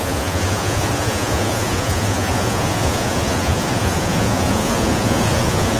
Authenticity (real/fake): fake